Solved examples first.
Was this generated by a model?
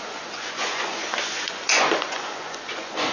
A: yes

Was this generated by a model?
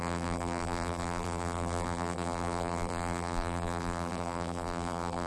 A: yes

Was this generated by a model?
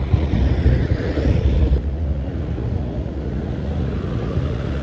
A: yes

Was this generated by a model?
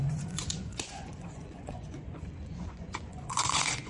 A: yes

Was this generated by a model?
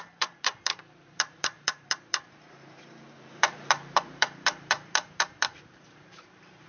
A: yes